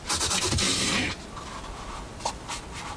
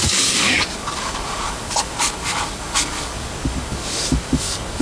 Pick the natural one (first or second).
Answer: first